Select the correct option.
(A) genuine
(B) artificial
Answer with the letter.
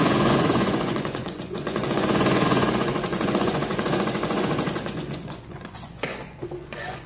B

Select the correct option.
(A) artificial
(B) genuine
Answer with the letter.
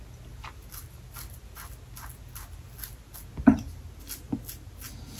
B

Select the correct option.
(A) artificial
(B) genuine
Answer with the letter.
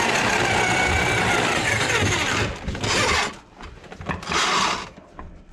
B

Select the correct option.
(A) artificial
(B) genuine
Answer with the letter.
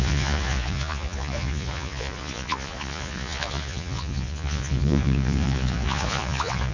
A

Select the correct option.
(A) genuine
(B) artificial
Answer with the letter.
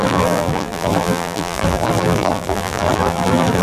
B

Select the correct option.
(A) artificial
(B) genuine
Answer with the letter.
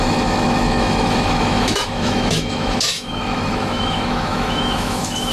A